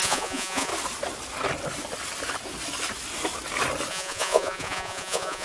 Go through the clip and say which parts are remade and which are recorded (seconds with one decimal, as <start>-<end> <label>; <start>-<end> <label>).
0.0-0.7 remade; 0.7-3.9 recorded; 3.9-5.4 remade